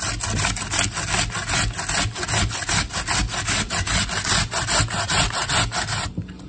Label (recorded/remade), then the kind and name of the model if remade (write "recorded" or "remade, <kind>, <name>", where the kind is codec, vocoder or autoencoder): recorded